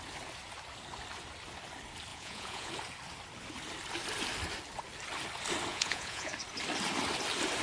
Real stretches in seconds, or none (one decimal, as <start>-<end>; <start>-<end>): 0.0-2.1; 2.7-5.7; 6.3-7.6